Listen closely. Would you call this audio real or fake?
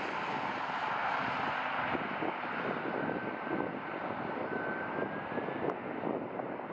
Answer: real